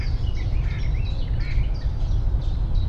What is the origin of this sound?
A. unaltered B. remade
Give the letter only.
B